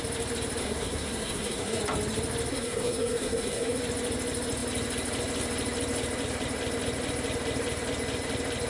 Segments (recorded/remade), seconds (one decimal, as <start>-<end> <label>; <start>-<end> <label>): 0.0-0.6 recorded; 0.6-1.8 remade; 1.8-2.5 recorded; 2.5-3.8 remade; 3.8-8.7 recorded